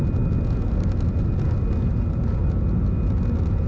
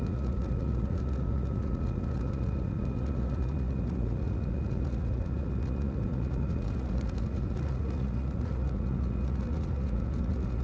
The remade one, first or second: second